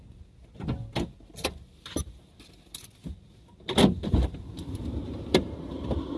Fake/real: real